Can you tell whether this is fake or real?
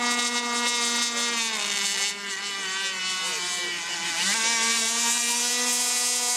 real